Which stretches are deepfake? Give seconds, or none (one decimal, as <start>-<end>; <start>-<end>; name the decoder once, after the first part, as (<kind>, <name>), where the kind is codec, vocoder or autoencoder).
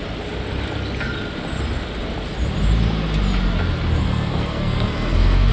4.0-5.5 (codec, SNAC)